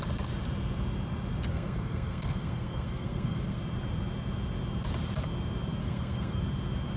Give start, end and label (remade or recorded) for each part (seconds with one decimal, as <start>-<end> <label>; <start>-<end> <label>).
0.0-1.5 recorded; 1.5-3.6 remade; 3.6-5.8 recorded; 5.8-6.4 remade; 6.4-7.0 recorded